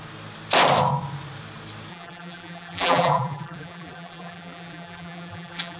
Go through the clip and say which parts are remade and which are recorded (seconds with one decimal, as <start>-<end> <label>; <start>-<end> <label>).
0.0-1.9 recorded; 1.9-5.8 remade